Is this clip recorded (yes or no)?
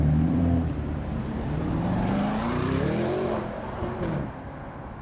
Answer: no